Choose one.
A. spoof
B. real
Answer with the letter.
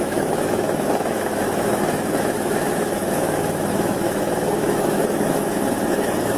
A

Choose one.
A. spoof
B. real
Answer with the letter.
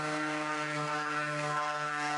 A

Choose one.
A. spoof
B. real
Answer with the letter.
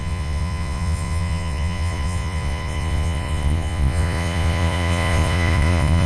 A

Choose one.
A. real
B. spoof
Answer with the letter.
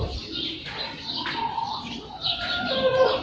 A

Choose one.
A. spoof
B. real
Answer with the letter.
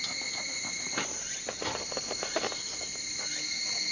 B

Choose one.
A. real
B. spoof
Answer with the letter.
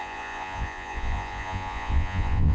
B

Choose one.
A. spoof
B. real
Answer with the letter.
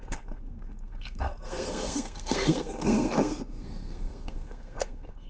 A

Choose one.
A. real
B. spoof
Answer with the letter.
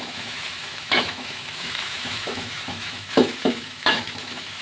B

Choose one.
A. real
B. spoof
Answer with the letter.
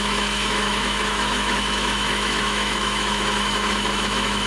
B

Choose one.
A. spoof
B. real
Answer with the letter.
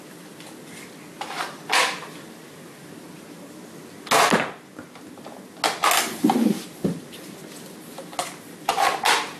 B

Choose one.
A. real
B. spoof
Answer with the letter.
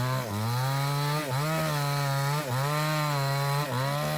A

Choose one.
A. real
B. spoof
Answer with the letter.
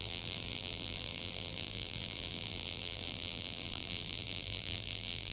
B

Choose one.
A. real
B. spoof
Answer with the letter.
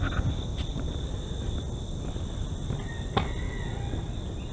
A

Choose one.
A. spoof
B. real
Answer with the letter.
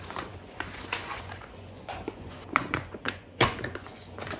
A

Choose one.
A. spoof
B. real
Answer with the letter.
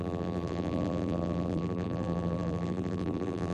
A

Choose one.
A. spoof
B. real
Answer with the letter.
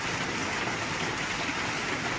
B